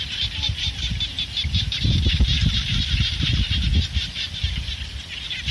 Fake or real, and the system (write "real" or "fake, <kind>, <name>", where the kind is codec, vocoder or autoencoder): real